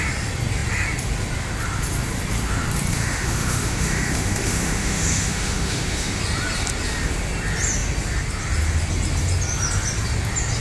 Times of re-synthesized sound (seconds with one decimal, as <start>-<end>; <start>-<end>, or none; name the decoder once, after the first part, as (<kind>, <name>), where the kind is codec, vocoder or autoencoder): 2.9-6.2 (autoencoder, DAC-VAE)